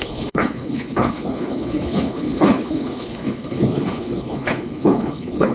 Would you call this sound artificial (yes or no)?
yes